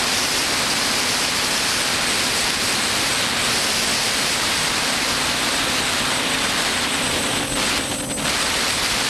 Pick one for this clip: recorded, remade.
recorded